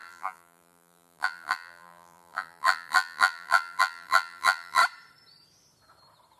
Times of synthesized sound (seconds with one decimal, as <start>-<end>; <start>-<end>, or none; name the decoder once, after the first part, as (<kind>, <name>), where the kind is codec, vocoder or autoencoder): 0.0-4.8 (vocoder, BigVGAN v2)